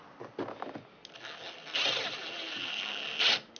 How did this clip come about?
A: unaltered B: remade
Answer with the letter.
A